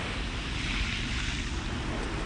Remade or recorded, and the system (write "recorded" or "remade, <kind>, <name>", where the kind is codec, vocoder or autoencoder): recorded